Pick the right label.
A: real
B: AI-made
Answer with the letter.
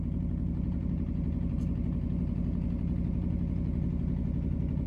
A